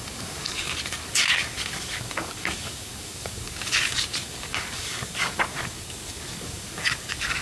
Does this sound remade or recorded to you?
remade